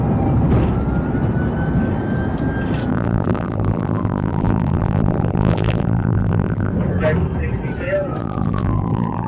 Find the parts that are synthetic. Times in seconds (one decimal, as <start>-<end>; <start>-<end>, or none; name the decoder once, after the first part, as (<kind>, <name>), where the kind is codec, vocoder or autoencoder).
2.9-6.7 (vocoder, BigVGAN v2); 8.2-9.3